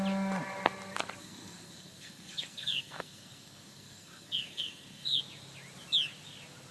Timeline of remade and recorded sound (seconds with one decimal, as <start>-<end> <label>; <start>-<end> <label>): 0.0-1.2 recorded; 1.2-5.2 remade; 5.2-6.7 recorded